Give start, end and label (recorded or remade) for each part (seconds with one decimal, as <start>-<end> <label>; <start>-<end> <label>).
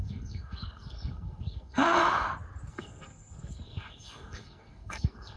0.0-2.0 remade; 2.0-2.7 recorded; 2.7-5.4 remade